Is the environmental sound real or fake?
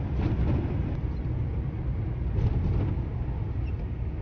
real